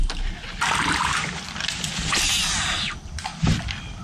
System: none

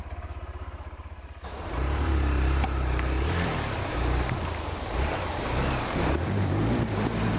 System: vocoder, BigVGAN v2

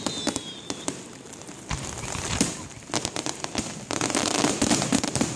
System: none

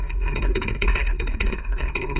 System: codec, SNAC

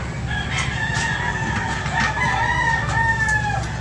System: none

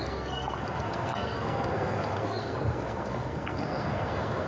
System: codec, SNAC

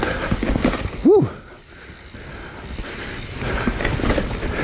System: none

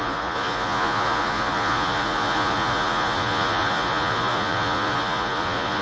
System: vocoder, Vocos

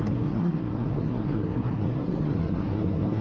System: codec, SNAC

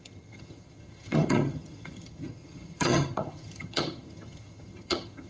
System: vocoder, HiFi-GAN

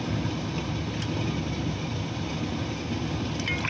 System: none